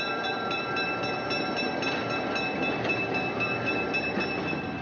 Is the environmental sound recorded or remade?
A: recorded